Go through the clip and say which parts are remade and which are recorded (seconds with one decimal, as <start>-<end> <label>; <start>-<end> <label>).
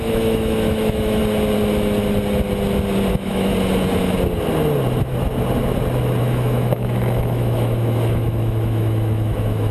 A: 0.0-1.2 remade; 1.2-3.1 recorded; 3.1-3.5 remade; 3.5-6.2 recorded; 6.2-9.7 remade